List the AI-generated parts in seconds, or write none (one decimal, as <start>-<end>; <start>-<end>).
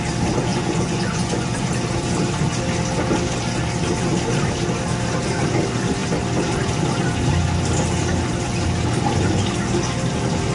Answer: 0.5-1.7